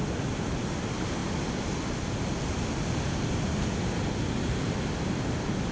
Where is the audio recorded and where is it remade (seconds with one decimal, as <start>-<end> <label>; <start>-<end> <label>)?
0.0-5.7 recorded

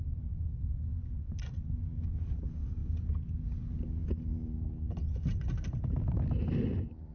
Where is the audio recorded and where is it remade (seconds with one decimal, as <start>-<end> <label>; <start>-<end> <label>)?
0.0-7.1 recorded

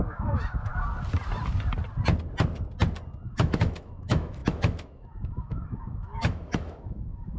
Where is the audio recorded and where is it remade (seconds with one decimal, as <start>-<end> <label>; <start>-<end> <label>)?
0.0-0.7 remade; 0.7-3.3 recorded; 3.3-7.4 remade

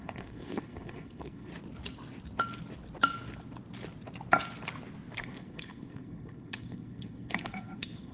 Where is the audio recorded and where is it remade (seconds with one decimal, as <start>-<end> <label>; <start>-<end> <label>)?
0.0-1.5 remade; 1.5-5.2 recorded; 5.2-8.1 remade

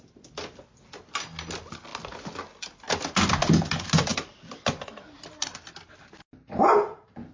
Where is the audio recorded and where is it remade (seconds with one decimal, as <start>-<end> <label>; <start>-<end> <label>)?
0.0-7.3 recorded

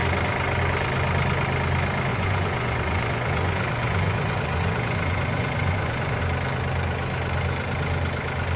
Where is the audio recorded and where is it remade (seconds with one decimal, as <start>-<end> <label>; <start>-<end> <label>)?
0.0-2.1 recorded; 2.1-6.2 remade; 6.2-8.6 recorded